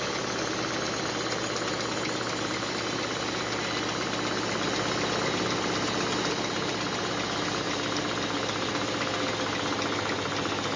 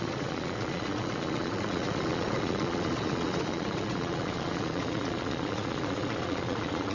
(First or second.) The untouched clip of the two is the first